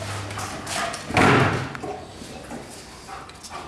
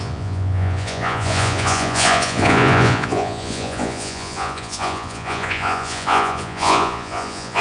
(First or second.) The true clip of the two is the first